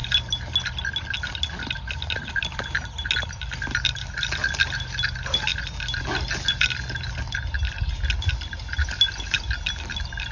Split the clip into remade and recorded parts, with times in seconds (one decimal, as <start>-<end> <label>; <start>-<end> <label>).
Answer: 0.0-10.3 recorded